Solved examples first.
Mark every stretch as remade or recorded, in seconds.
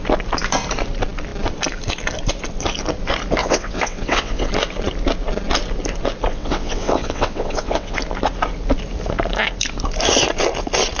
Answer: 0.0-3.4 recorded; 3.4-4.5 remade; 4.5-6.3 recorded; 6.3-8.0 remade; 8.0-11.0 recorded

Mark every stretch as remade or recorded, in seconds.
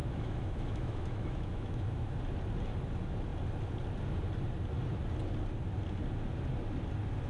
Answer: 0.0-2.2 remade; 2.2-7.3 recorded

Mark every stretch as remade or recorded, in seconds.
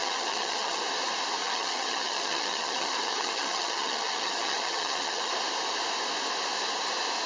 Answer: 0.0-0.8 remade; 0.8-1.4 recorded; 1.4-5.3 remade; 5.3-7.3 recorded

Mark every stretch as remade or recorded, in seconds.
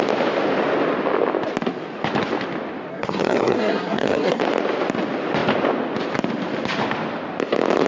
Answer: 0.0-2.9 recorded; 2.9-4.4 remade; 4.4-7.9 recorded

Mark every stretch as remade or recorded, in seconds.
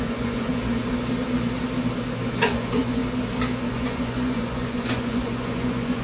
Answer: 0.0-0.5 remade; 0.5-2.4 recorded; 2.4-3.0 remade; 3.0-3.7 recorded; 3.7-6.0 remade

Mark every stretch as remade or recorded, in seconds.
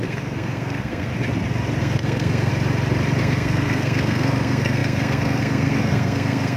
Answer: 0.0-1.1 remade; 1.1-1.8 recorded; 1.8-2.5 remade; 2.5-3.2 recorded; 3.2-6.6 remade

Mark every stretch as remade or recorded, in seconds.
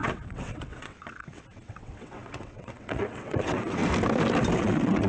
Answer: 0.0-3.8 remade; 3.8-4.5 recorded; 4.5-5.1 remade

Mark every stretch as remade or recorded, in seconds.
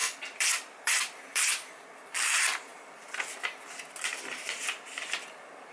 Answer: 0.0-1.7 remade; 1.7-5.7 recorded